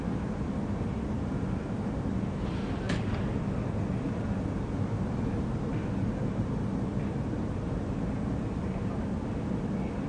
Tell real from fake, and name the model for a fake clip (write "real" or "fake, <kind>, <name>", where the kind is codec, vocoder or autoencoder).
real